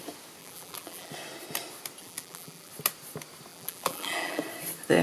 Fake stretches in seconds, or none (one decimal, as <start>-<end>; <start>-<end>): 0.4-1.1; 2.0-2.7; 3.5-4.4